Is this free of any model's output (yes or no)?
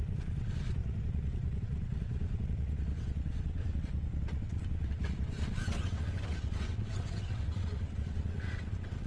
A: no